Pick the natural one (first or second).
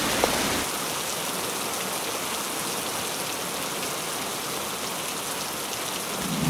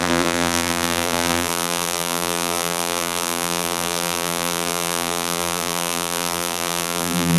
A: first